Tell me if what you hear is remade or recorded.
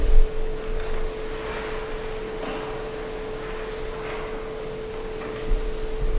recorded